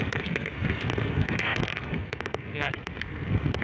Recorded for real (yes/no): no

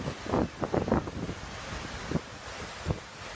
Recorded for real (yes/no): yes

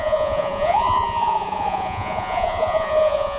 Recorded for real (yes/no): no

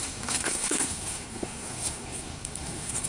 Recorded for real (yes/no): no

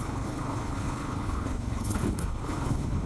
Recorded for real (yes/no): no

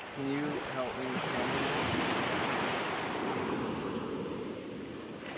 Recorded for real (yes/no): yes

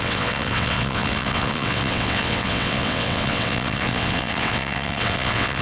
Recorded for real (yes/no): no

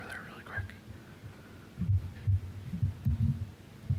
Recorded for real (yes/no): yes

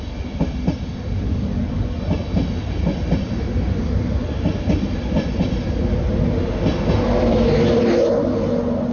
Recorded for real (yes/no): yes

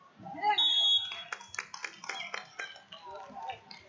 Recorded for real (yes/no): yes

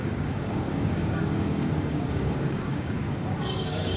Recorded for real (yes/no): no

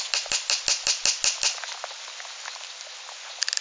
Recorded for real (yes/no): yes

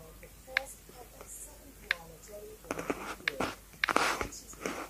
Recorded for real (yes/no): yes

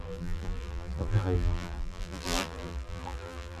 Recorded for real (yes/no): no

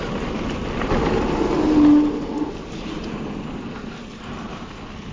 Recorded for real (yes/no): yes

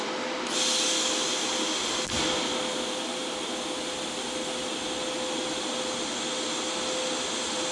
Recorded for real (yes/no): yes